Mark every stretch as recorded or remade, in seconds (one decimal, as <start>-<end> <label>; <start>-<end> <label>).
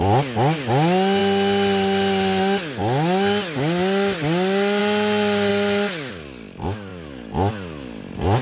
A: 0.0-8.4 recorded